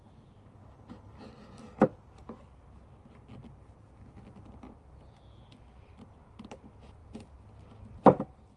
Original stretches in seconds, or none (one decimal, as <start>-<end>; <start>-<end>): 0.0-8.6